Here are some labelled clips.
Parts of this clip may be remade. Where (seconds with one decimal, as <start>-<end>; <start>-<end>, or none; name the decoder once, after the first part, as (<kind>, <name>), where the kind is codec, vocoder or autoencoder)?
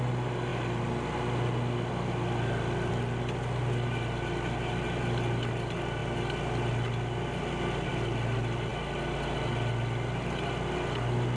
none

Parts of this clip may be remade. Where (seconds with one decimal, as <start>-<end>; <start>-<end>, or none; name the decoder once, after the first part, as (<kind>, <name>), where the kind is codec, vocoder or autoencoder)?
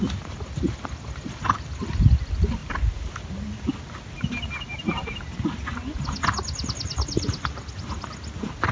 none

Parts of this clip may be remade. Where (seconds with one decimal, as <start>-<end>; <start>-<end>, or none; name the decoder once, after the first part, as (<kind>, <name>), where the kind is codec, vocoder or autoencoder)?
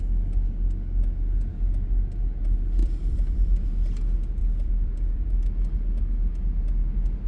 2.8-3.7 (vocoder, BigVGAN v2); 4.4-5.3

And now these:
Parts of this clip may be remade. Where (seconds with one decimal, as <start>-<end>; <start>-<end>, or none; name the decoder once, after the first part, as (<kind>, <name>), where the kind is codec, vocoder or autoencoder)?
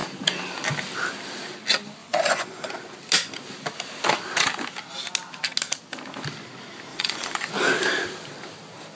2.0-2.7 (vocoder, Vocos); 6.9-7.5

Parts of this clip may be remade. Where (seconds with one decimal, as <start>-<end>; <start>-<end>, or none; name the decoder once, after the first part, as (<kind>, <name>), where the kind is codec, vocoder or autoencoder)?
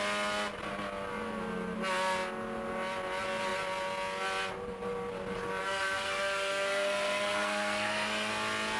5.6-8.3 (codec, SNAC)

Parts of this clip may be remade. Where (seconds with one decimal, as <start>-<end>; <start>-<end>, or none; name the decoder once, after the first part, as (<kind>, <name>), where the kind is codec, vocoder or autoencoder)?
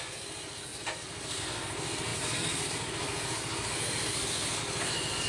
0.0-5.3 (codec, SNAC)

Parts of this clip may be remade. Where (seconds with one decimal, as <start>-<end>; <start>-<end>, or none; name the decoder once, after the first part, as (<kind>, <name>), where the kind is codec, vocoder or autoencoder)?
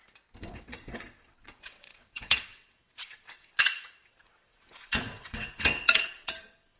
0.5-6.8 (vocoder, WaveNeXt)